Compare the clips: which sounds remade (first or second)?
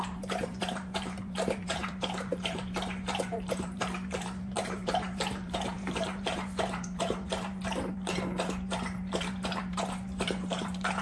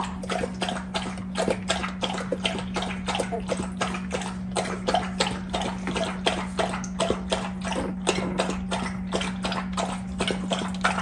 first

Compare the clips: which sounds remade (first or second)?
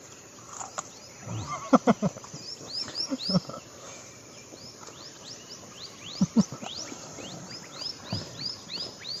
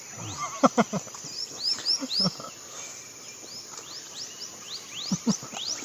first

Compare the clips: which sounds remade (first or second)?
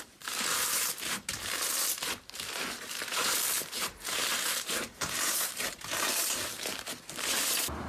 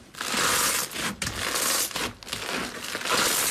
first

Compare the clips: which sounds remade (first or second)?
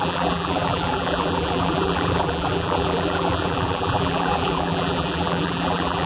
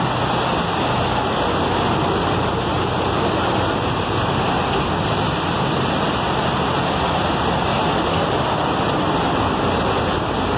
first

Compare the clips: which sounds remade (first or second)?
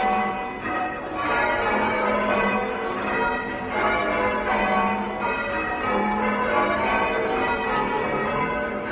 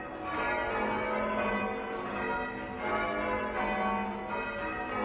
first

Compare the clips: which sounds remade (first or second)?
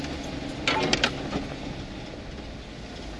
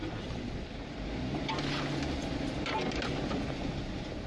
second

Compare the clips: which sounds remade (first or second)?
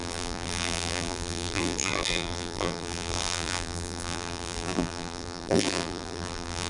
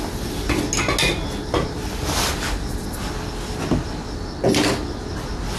first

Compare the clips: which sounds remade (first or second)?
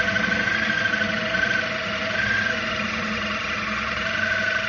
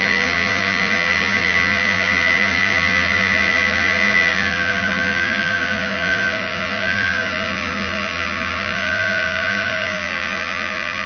second